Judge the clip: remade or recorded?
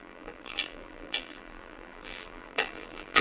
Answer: remade